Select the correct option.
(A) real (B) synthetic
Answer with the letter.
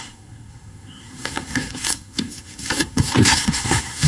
B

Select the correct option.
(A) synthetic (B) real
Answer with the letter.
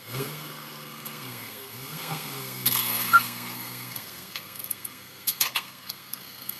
A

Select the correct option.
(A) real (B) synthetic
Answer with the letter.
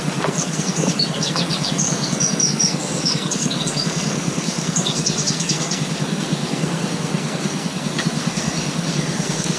B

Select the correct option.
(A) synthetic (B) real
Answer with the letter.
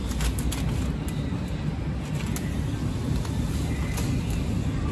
B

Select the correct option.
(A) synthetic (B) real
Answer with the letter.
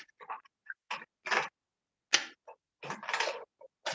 B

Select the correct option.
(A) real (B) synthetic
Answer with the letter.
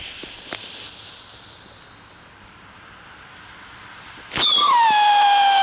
A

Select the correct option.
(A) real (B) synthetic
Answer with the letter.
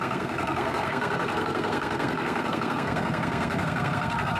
B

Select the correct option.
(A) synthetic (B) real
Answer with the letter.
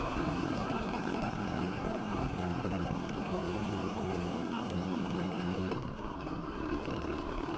A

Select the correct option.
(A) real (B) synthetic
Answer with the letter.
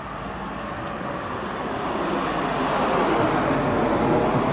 A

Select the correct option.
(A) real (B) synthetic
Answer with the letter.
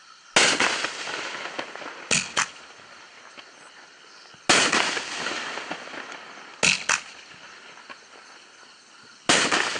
A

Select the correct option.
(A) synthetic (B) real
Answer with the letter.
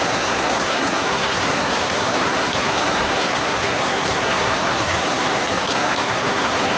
A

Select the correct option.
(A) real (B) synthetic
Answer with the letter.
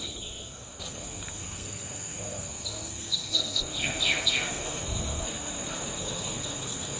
B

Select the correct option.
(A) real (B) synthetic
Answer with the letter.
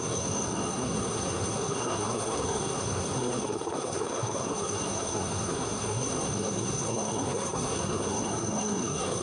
B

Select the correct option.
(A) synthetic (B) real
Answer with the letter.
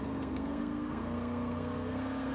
A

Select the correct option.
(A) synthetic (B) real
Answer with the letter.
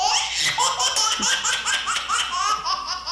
B